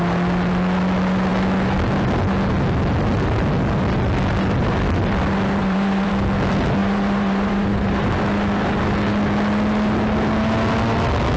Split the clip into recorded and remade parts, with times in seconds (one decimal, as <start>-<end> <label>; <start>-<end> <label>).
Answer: 0.0-5.6 recorded; 5.6-6.1 remade; 6.1-6.8 recorded; 6.8-8.1 remade; 8.1-11.4 recorded